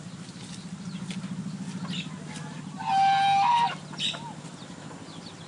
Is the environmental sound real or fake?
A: real